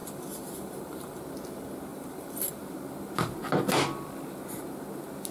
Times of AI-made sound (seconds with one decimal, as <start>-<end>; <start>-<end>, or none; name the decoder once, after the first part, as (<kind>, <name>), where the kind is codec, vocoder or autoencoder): 0.0-1.2 (vocoder, BigVGAN v2); 1.9-2.6